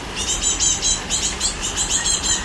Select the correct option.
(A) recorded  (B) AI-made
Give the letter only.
A